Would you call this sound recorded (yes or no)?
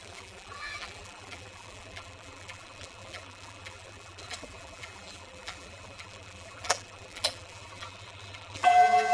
no